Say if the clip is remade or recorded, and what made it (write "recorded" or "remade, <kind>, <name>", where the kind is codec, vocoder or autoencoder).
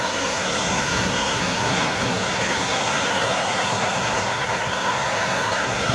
remade, codec, SNAC